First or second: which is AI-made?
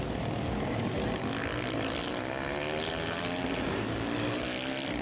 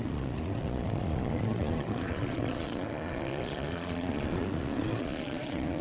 second